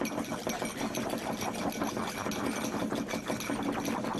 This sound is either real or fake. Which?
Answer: real